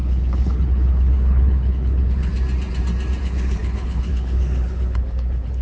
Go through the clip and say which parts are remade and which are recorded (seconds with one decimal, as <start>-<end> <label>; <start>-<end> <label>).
0.0-2.3 remade; 2.3-3.2 recorded; 3.2-5.6 remade